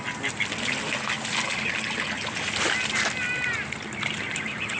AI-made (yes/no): no